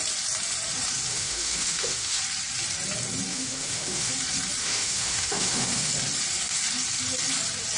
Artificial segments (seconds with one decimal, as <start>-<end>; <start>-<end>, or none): 1.1-2.2; 3.3-4.1; 4.6-5.9